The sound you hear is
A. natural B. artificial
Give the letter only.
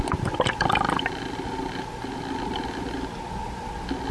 A